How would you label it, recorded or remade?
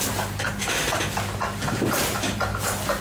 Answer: recorded